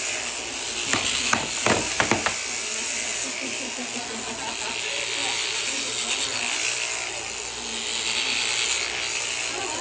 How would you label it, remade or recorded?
recorded